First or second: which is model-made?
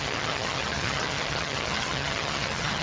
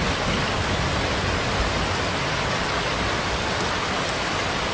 first